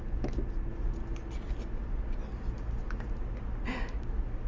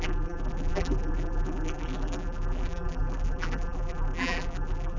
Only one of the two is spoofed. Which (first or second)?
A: second